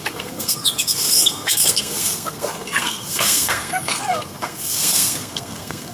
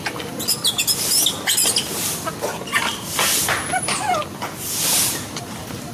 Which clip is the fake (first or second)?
first